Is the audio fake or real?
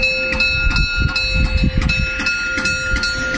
real